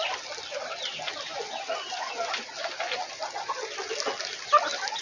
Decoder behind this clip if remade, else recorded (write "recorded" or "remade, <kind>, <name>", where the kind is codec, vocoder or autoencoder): recorded